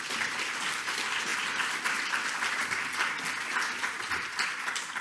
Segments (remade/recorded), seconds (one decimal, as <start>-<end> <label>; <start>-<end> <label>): 0.0-5.0 recorded